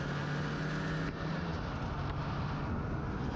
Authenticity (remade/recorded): recorded